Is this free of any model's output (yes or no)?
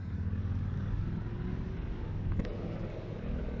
no